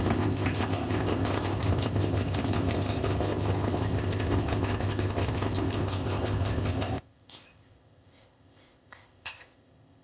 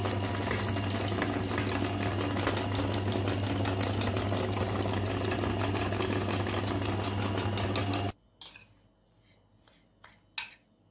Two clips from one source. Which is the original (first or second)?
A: second